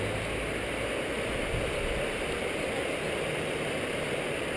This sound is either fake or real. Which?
real